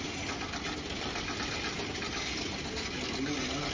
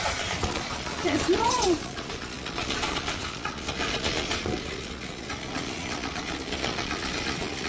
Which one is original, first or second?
first